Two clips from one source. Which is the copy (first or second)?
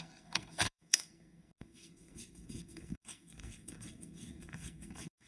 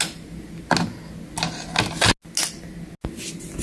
first